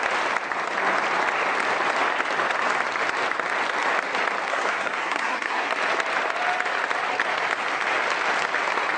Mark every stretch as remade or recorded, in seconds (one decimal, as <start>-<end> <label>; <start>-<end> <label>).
0.0-4.5 recorded; 4.5-5.7 remade; 5.7-9.0 recorded